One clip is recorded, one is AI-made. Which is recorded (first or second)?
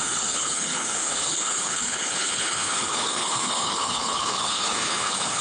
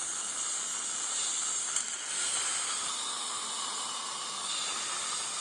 second